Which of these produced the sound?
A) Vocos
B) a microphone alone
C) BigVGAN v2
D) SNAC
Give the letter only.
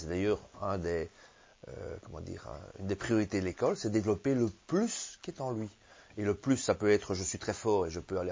B